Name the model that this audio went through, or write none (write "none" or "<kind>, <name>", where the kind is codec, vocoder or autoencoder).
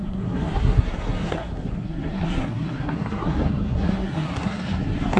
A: codec, SNAC